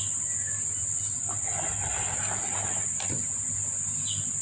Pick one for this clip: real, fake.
real